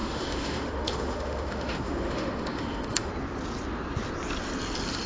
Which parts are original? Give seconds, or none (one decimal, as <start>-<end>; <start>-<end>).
3.1-5.1